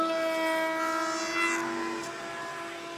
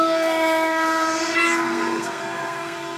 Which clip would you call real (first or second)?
first